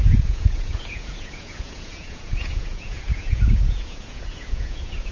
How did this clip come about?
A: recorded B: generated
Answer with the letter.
B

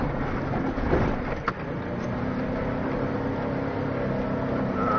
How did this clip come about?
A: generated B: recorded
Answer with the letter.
B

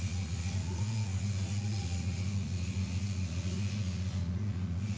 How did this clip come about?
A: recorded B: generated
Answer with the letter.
B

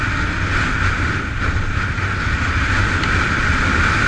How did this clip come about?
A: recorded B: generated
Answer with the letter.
A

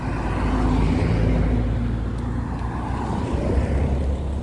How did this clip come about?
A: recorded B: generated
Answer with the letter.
A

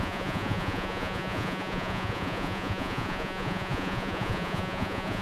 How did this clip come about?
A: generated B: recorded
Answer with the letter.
A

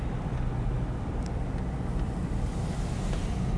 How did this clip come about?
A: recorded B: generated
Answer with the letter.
A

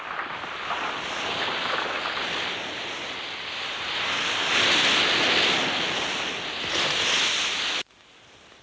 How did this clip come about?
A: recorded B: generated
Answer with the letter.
A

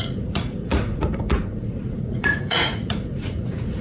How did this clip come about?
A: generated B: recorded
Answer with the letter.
A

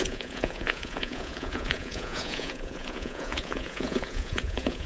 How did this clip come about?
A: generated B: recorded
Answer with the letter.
A